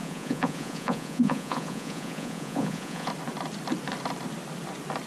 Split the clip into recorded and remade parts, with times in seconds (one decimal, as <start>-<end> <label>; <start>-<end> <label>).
0.0-3.1 remade; 3.1-5.1 recorded